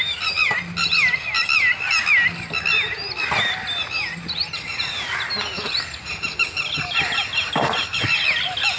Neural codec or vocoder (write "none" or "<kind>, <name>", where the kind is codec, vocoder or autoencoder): none